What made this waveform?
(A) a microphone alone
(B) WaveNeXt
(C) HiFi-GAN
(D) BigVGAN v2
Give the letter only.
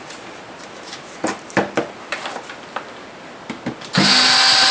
A